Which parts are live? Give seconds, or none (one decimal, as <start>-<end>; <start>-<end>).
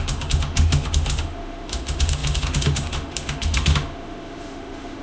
none